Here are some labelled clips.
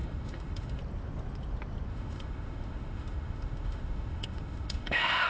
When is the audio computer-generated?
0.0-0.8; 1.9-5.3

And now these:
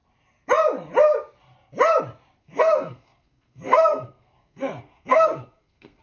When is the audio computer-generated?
2.4-6.0

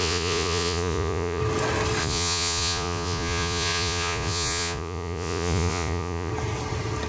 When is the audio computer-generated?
0.0-1.4; 2.0-6.3